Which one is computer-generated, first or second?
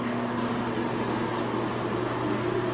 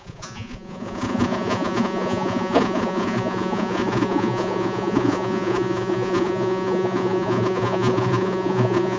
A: second